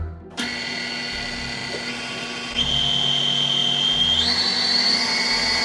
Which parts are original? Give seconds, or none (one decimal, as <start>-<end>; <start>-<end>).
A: 0.0-5.6